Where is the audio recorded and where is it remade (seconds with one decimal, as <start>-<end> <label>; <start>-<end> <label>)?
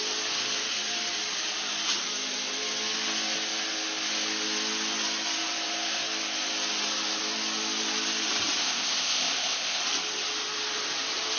0.0-8.6 recorded; 8.6-9.8 remade; 9.8-11.4 recorded